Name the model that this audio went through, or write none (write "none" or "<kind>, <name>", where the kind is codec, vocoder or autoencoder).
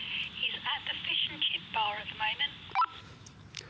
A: none